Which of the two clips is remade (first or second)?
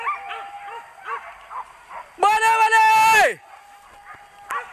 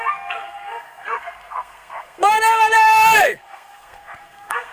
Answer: second